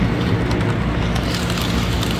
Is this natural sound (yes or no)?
yes